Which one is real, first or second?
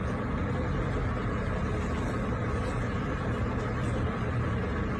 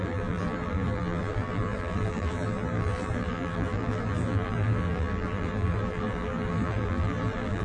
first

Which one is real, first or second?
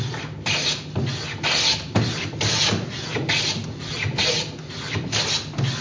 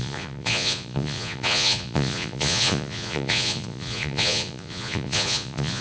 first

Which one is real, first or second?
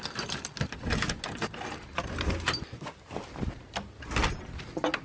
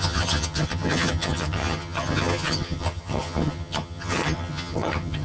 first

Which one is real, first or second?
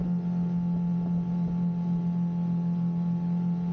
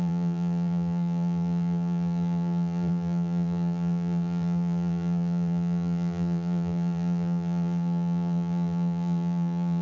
first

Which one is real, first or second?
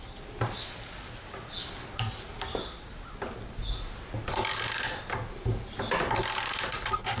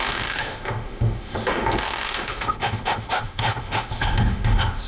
first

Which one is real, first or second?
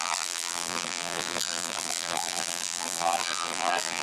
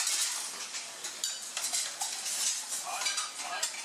second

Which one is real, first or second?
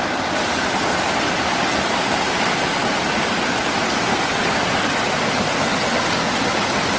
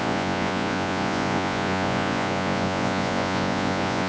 first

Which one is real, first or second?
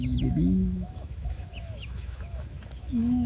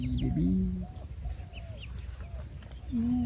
second